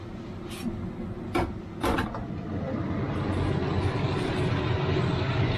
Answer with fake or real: real